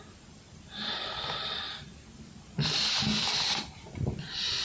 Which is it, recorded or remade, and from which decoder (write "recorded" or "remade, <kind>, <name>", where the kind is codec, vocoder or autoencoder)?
recorded